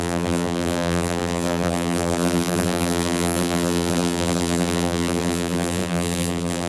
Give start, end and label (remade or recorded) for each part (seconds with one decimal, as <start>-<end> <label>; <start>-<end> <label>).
0.0-6.7 remade